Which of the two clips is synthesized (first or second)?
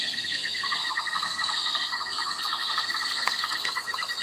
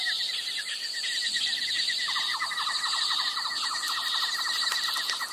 first